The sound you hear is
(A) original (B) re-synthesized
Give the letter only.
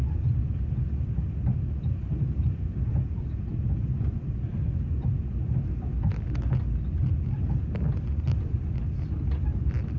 A